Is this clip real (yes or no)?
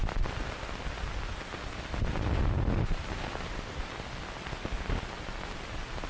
yes